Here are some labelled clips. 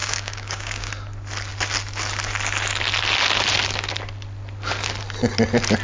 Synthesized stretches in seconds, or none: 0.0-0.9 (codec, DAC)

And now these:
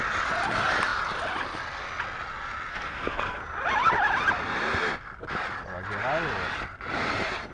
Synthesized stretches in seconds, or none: 2.7-3.4 (codec, SNAC)

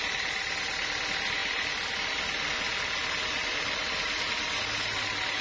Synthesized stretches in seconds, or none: none

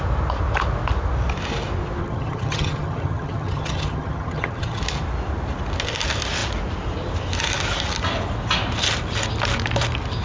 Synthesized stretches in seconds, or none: 2.0-4.8 (vocoder, HiFi-GAN)

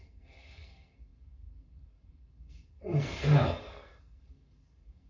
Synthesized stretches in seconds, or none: 0.0-5.1 (codec, SNAC)